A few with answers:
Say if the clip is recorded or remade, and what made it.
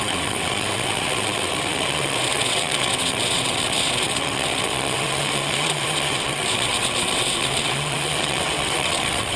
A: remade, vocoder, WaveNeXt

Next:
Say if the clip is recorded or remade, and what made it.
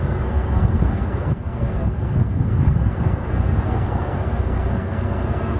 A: remade, codec, SNAC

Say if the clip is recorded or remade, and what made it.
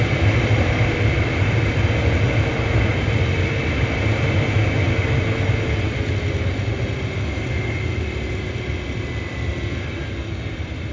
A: recorded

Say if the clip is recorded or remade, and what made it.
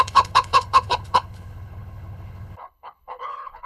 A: remade, codec, HILCodec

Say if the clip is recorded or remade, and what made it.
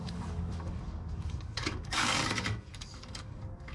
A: remade, codec, DAC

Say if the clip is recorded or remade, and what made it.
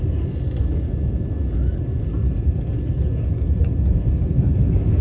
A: recorded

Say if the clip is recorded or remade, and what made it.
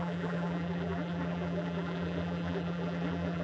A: remade, vocoder, BigVGAN v2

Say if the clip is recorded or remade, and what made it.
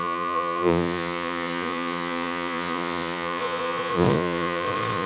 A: remade, vocoder, Vocos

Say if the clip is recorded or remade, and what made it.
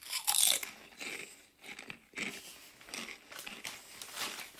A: recorded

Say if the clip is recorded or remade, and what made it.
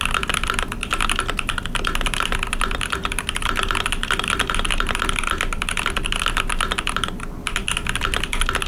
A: recorded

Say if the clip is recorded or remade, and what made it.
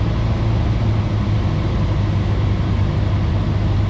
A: recorded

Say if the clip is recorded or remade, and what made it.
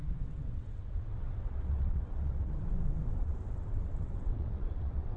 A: remade, vocoder, WaveNeXt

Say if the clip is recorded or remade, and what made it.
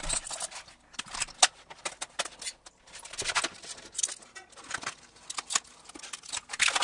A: recorded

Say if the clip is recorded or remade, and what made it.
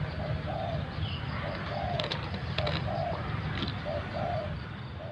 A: recorded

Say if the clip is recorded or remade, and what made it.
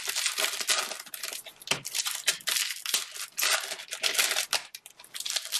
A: recorded